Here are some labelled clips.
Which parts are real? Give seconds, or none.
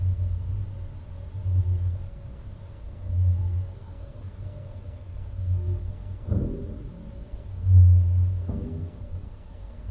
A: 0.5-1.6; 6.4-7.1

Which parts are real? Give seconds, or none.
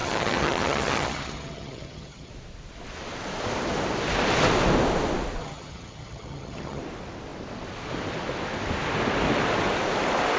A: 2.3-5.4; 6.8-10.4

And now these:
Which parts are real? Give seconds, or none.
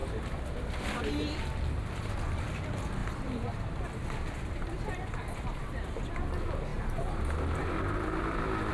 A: 1.0-3.0; 6.0-8.7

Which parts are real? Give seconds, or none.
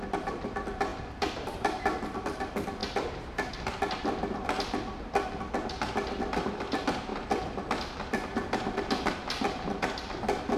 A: 2.8-6.2